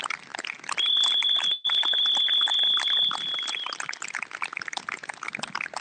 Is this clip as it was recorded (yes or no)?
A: yes